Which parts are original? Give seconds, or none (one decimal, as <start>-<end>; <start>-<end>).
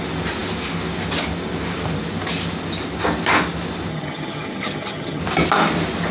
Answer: 0.0-3.9; 5.2-6.1